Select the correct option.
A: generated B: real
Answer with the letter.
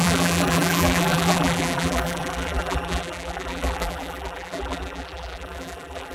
A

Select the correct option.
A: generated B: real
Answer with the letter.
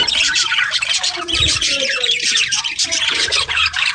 A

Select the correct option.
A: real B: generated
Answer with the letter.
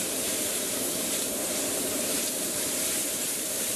B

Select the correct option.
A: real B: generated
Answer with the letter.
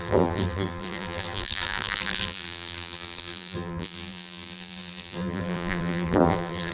B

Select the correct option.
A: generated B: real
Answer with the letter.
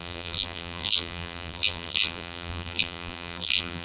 A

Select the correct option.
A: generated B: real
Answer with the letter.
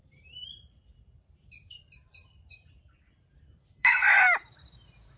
A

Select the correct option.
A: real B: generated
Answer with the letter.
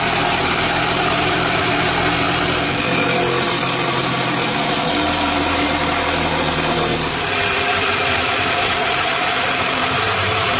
B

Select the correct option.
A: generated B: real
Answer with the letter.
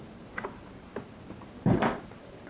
A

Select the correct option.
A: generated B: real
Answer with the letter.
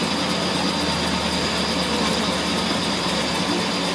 B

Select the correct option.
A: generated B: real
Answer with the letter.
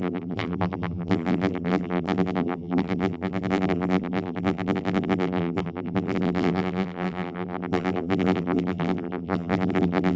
A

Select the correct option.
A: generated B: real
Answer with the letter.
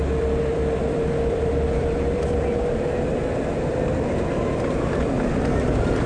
A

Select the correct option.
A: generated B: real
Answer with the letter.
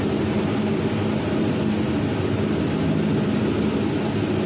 B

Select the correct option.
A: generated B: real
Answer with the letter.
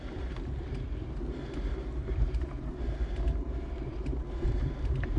A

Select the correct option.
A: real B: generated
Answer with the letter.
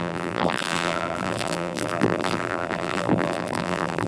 B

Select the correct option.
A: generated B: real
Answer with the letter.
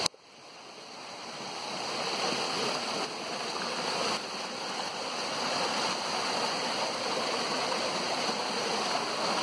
B